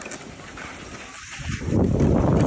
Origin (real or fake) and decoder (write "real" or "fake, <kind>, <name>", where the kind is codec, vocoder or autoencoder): real